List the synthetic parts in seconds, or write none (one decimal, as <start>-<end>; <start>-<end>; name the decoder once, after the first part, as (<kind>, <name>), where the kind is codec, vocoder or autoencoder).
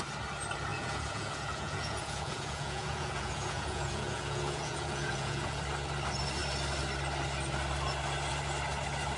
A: 0.7-5.6 (vocoder, Vocos)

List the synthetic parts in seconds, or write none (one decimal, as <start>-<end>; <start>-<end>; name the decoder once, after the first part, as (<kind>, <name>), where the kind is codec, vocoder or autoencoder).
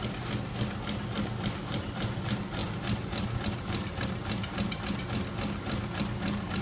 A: none